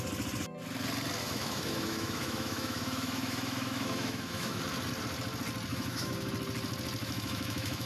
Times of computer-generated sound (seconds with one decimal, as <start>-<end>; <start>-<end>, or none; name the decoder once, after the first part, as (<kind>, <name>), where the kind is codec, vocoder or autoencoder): 1.2-4.6 (autoencoder, DAC-VAE); 5.7-6.3; 7.0-7.9